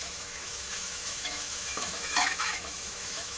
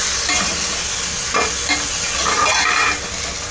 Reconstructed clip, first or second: first